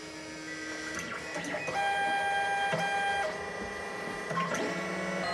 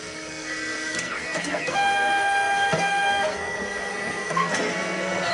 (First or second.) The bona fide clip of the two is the first